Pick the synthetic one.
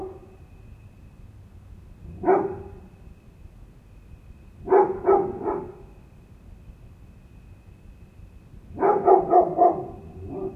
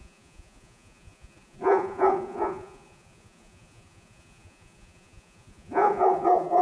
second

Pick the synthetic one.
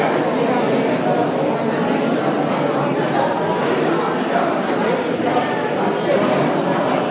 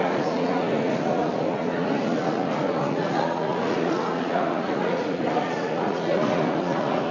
second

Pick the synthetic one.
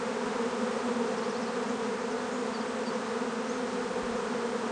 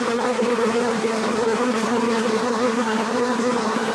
second